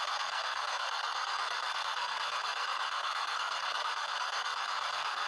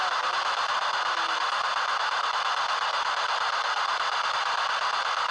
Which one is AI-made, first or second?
first